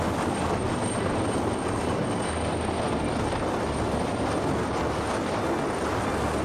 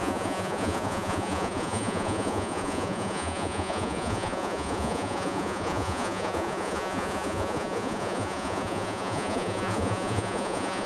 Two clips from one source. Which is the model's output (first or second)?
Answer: second